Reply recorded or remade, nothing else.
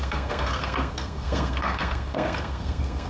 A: remade